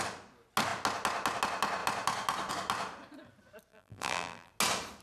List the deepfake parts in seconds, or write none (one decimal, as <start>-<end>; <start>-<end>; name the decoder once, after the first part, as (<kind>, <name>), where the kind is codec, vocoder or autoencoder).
3.7-4.5 (vocoder, BigVGAN v2)